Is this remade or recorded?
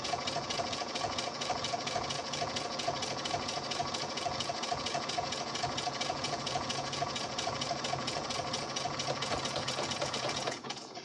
remade